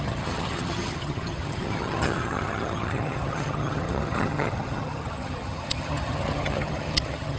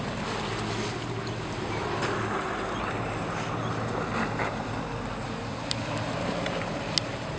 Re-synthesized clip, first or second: first